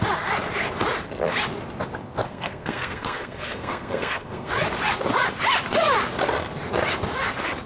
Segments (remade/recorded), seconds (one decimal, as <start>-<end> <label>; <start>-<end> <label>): 0.0-2.2 recorded; 2.2-4.5 remade; 4.5-7.7 recorded